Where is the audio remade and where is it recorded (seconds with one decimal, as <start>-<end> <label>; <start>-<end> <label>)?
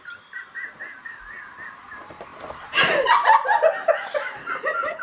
0.0-2.3 remade; 2.3-3.9 recorded; 3.9-5.0 remade